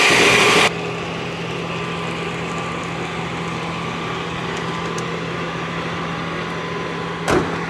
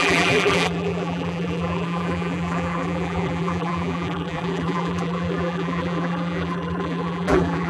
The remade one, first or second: second